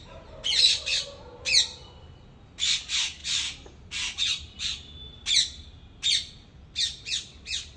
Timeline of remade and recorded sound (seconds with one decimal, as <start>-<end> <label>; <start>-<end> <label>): 0.0-7.8 recorded